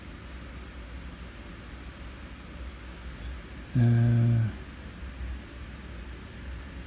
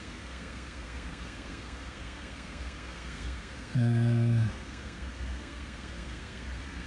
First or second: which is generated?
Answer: second